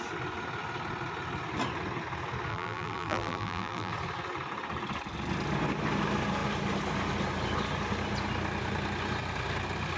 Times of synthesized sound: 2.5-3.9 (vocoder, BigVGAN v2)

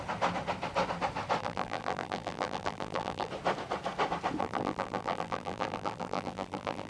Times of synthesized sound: 1.4-3.3 (vocoder, BigVGAN v2); 4.4-6.9

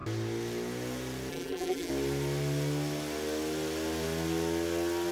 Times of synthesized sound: 1.3-1.9 (vocoder, BigVGAN v2)

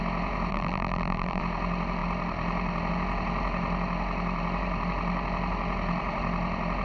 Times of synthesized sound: 0.5-1.4 (vocoder, BigVGAN v2)

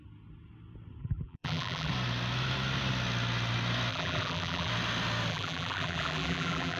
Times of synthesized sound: 1.0-1.9 (vocoder, BigVGAN v2); 3.9-4.7; 5.3-6.8

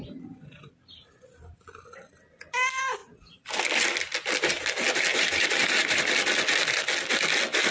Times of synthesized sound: 5.1-6.0 (vocoder, BigVGAN v2)

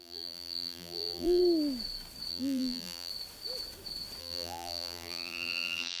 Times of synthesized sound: 0.0-1.4 (vocoder, BigVGAN v2); 2.3-3.1; 4.2-6.0